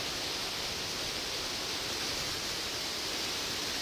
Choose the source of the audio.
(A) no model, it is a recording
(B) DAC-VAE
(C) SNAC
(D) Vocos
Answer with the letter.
A